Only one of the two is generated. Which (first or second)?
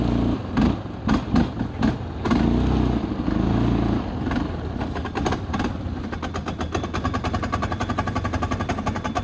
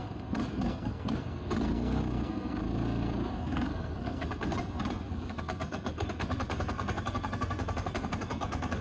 second